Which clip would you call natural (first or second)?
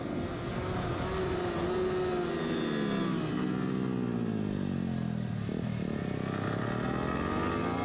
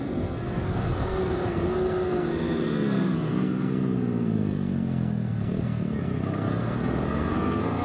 first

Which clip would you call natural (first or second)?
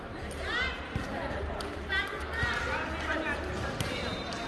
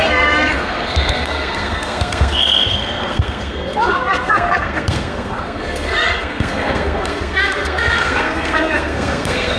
first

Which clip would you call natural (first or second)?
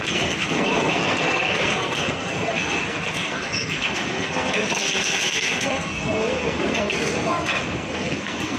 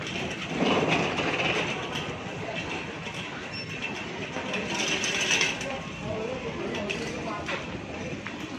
second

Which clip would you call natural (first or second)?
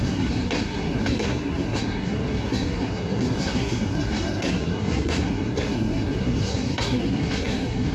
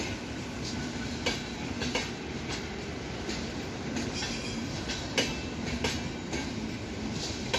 second